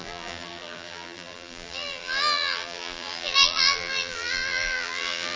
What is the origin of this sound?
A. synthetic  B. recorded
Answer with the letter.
A